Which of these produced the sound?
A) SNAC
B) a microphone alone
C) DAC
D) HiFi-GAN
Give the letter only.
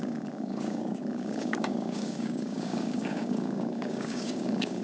C